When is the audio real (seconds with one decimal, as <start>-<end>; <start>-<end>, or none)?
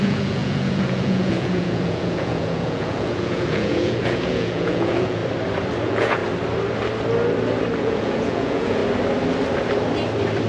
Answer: 5.2-5.8; 6.2-7.8; 8.8-10.5